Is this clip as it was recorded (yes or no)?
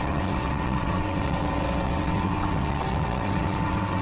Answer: no